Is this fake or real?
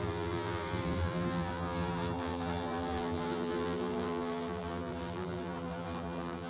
fake